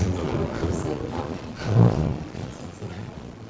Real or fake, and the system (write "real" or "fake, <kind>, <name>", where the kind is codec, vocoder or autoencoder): fake, vocoder, Vocos